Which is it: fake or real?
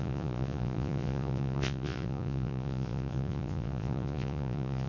fake